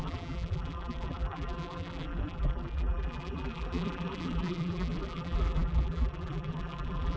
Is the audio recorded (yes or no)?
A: no